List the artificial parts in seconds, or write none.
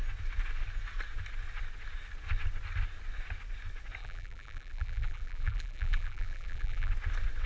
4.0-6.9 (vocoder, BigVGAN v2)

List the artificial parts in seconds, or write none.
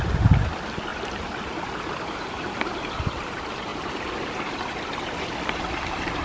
0.9-2.8 (vocoder, BigVGAN v2)